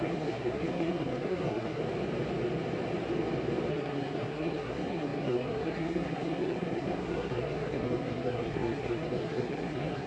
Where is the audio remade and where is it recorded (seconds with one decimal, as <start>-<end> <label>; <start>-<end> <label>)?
0.0-1.8 remade; 1.8-3.7 recorded; 3.7-10.1 remade